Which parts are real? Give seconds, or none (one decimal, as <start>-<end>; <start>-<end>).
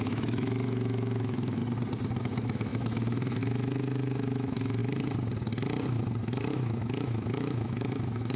1.6-2.2; 4.8-6.2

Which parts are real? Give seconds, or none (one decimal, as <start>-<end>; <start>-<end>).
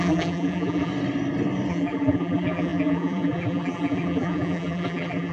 0.9-1.7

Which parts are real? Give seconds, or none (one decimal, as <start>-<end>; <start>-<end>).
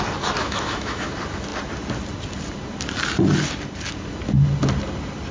0.0-0.4; 1.1-5.3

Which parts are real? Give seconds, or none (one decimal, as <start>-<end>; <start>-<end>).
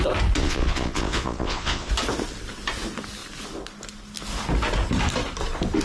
0.0-0.4; 1.9-5.8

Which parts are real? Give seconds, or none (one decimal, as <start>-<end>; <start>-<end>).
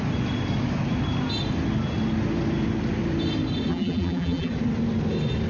0.0-3.7; 4.5-5.5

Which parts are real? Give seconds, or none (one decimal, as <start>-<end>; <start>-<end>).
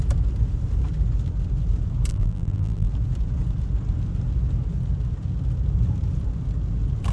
0.0-2.1; 2.9-7.1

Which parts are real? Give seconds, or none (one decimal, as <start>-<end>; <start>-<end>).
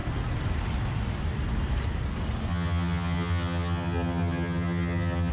0.0-2.5